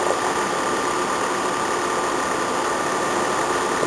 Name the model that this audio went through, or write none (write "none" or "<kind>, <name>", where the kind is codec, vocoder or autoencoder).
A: none